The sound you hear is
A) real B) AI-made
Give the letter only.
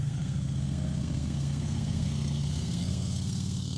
B